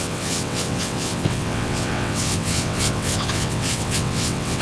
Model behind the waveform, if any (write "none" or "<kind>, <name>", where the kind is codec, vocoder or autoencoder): vocoder, WaveNeXt